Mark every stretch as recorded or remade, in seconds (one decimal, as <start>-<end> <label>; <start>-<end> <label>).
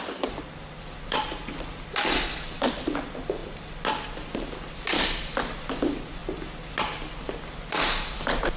0.0-6.2 remade; 6.2-6.8 recorded; 6.8-8.6 remade